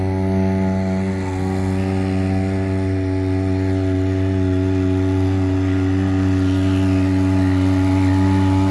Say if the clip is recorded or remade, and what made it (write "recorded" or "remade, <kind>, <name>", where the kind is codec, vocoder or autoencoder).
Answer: recorded